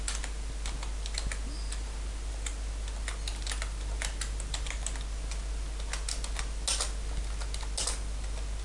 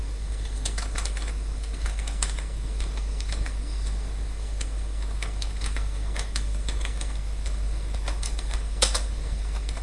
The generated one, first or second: second